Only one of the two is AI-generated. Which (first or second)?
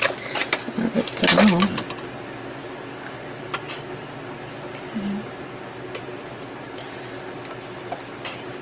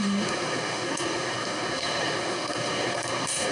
second